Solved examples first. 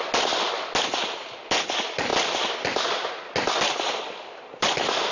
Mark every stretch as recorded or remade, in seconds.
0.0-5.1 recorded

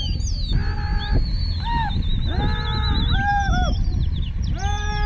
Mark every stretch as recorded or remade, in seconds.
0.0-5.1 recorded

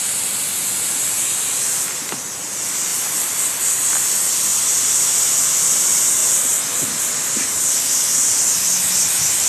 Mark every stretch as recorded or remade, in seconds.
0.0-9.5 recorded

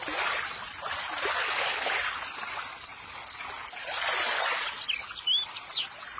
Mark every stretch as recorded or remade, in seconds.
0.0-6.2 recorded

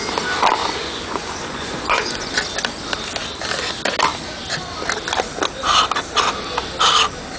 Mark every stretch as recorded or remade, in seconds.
0.0-0.6 recorded; 0.6-2.3 remade; 2.3-7.4 recorded

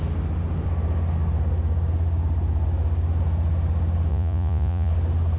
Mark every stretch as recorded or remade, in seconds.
0.0-4.1 recorded; 4.1-4.9 remade; 4.9-5.4 recorded

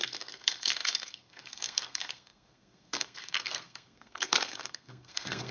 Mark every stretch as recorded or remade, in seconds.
0.0-5.5 remade

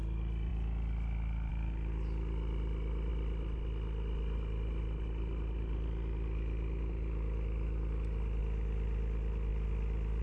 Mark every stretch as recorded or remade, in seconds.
0.0-10.2 recorded